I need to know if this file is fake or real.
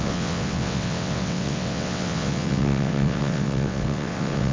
fake